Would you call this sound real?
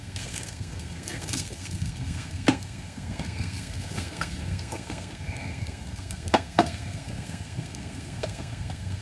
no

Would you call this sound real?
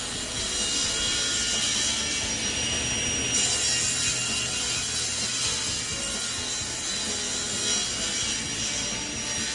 yes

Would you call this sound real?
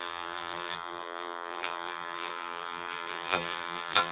no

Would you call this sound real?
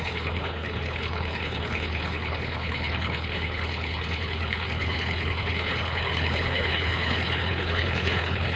no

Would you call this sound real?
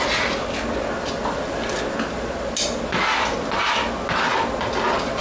yes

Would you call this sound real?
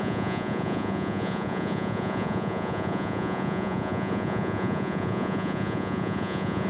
no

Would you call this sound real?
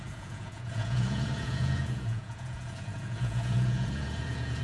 no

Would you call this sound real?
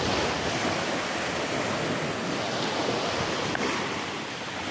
yes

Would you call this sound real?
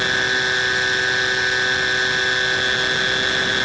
yes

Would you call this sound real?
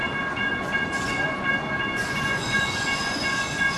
no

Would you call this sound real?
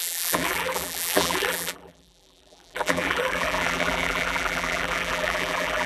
no